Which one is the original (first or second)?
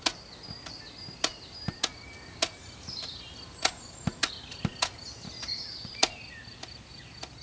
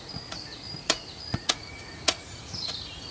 first